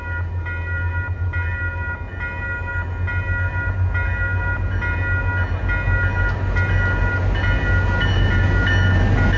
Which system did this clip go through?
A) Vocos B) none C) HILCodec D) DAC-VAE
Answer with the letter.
B